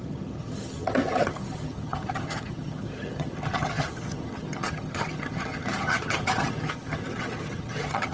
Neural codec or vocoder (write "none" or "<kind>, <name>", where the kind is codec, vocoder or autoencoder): vocoder, HiFi-GAN